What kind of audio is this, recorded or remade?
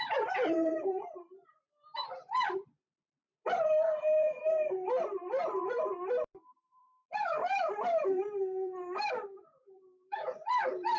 remade